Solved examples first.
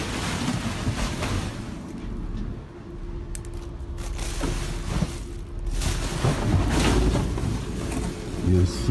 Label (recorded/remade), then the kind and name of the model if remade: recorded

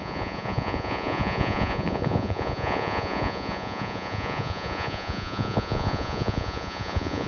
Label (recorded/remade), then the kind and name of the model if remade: remade, vocoder, Vocos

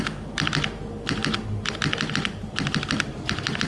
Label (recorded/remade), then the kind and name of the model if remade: recorded